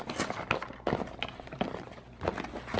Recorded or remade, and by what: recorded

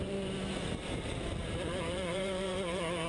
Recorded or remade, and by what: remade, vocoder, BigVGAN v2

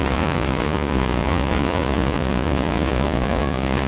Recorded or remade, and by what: remade, vocoder, Vocos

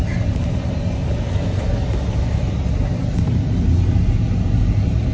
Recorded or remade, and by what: recorded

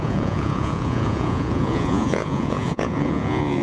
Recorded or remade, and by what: remade, vocoder, Vocos